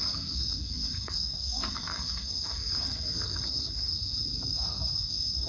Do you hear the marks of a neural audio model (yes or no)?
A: yes